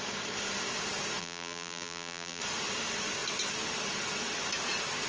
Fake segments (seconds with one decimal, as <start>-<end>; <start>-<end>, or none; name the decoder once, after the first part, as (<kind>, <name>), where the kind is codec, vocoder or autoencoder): 1.2-2.4 (vocoder, BigVGAN v2)